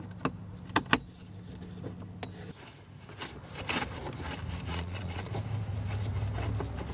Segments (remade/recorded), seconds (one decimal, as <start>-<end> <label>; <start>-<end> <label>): 0.0-4.7 recorded; 4.7-5.3 remade; 5.3-6.9 recorded